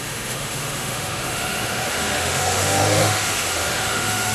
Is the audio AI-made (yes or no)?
yes